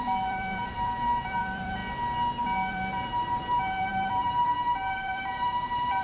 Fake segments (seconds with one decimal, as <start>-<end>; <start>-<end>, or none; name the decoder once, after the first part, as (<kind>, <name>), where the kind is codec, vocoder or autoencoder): 0.0-1.8 (vocoder, BigVGAN v2); 2.7-6.0